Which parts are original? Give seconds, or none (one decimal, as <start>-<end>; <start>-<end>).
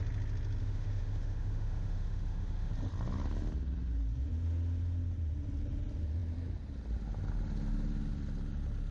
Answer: 0.0-0.6; 2.7-8.9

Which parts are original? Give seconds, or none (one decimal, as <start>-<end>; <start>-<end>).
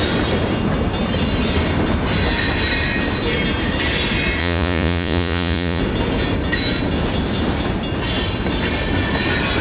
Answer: 0.0-4.4; 5.8-9.6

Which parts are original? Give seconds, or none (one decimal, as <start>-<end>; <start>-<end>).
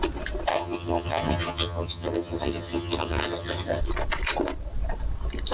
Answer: 0.0-0.5; 3.8-5.5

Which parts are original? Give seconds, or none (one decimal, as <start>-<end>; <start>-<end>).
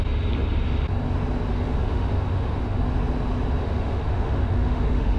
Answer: 0.0-1.5; 2.8-3.6